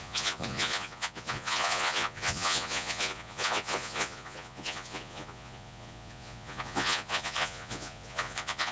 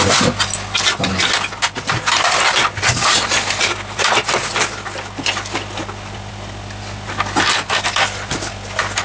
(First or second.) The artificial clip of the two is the first